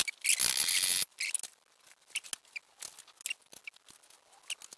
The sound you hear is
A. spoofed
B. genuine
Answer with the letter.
B